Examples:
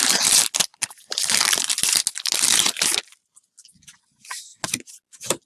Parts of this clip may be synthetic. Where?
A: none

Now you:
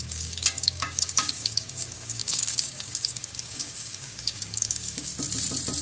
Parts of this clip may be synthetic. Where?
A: 0.0-5.1 (codec, DAC)